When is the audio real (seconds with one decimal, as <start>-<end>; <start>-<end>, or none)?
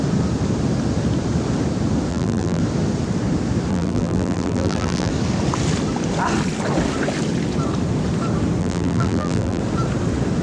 0.0-2.1; 2.6-3.7; 5.1-8.6; 9.6-10.4